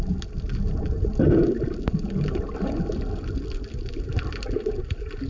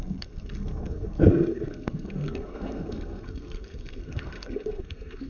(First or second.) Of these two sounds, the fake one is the second